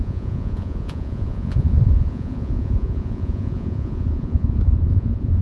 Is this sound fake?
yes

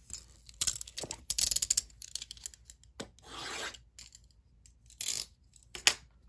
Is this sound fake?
no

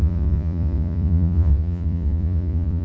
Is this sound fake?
yes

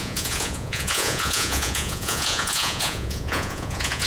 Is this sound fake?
yes